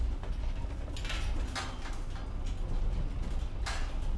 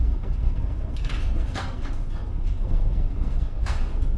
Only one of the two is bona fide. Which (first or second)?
first